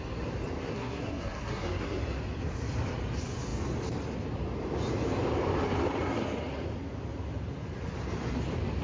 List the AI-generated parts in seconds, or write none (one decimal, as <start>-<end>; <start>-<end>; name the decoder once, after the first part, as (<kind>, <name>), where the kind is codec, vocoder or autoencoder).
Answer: 0.7-2.0 (codec, SNAC)